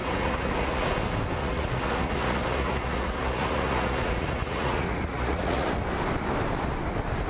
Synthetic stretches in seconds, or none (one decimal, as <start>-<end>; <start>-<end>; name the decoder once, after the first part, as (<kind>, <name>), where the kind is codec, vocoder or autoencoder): 0.0-0.8 (vocoder, Vocos); 1.4-5.7